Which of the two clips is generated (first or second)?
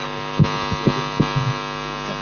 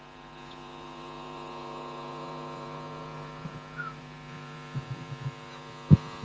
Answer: second